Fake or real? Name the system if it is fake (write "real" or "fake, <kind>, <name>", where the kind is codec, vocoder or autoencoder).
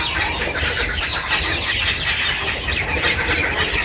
real